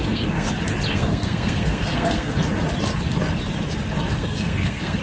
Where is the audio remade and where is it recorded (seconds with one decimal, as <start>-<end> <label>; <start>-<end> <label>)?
0.0-0.5 remade; 0.5-0.9 recorded; 0.9-2.3 remade; 2.3-4.1 recorded; 4.1-5.0 remade